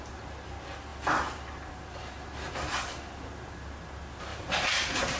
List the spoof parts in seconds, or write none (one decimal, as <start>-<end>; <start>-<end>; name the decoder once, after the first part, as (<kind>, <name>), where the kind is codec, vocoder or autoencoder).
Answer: 4.3-5.2 (vocoder, BigVGAN v2)